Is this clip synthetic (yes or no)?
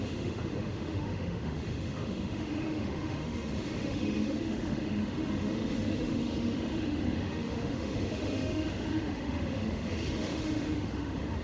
yes